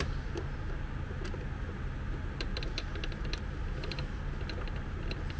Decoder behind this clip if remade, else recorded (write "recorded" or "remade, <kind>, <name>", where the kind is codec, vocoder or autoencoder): recorded